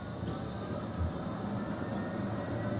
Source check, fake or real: real